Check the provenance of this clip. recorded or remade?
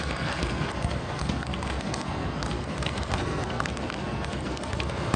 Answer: remade